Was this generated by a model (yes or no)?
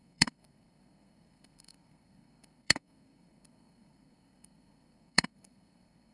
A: yes